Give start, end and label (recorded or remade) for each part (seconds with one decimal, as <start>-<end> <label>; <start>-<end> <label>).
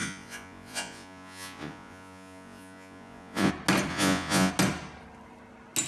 0.0-3.5 remade; 3.5-3.9 recorded; 3.9-4.5 remade; 4.5-5.9 recorded